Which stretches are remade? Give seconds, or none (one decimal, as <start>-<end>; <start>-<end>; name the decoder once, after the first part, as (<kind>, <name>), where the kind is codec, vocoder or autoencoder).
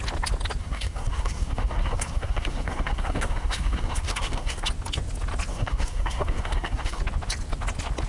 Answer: 0.6-4.7 (codec, SNAC); 5.5-7.0